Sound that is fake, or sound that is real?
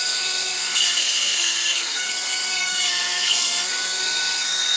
fake